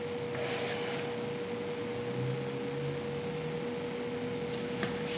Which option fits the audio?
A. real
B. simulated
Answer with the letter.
A